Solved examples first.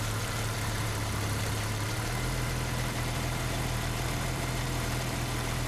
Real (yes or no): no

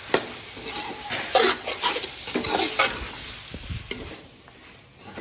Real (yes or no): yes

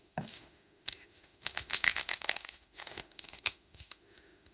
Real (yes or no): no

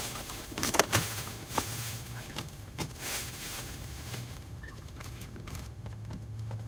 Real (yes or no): no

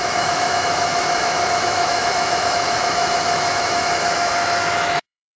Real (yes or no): no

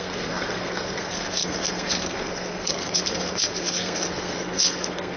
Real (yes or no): no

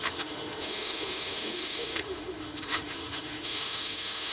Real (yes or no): no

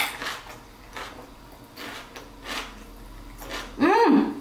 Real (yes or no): yes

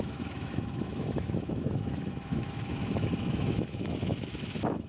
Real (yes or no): no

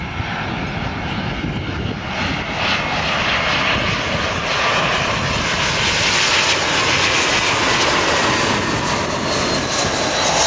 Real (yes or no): yes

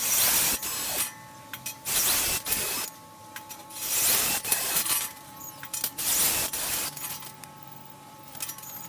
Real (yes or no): yes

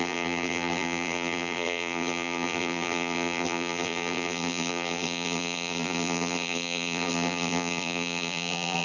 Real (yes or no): no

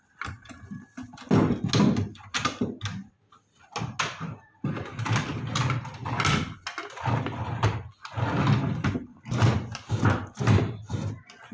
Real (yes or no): yes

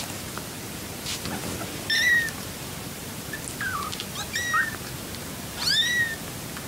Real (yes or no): yes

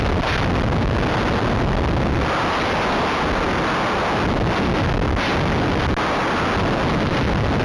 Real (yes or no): yes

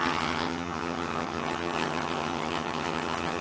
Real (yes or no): no